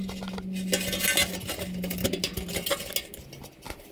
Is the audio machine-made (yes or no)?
no